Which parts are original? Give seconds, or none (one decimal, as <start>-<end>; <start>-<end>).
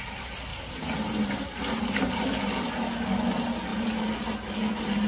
0.0-0.5; 2.2-5.1